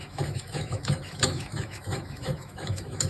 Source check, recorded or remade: remade